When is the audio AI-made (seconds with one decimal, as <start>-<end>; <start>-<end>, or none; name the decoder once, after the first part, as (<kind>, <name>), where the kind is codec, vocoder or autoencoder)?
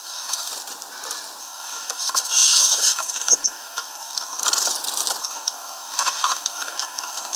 0.0-0.5 (codec, DAC); 1.4-4.4; 5.2-7.4